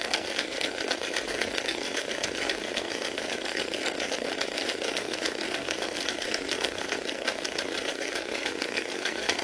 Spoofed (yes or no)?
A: yes